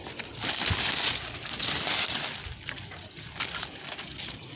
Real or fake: real